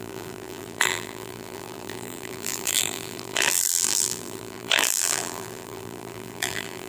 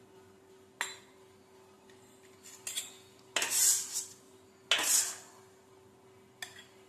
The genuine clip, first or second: second